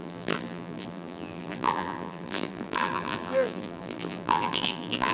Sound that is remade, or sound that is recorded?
remade